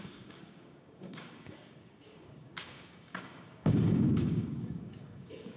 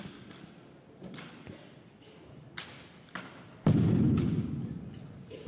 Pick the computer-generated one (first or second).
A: first